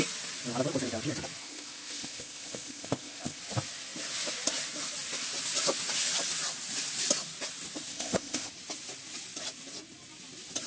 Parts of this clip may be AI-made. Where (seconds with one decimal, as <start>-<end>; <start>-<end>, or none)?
1.4-3.4; 7.9-8.5

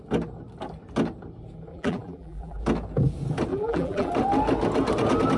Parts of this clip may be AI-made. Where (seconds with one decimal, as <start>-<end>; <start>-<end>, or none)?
1.7-2.6; 3.5-4.1

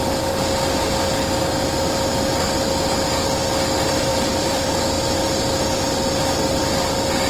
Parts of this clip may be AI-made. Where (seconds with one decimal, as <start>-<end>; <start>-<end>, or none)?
4.1-4.8

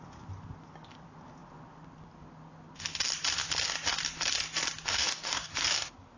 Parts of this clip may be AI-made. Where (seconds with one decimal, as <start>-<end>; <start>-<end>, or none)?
4.9-5.5

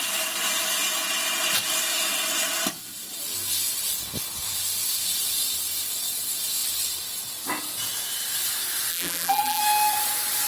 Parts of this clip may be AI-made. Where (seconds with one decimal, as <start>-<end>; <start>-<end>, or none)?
8.9-9.6

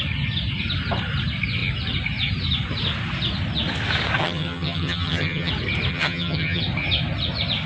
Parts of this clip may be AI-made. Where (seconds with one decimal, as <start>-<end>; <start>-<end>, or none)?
4.2-5.5; 5.9-6.6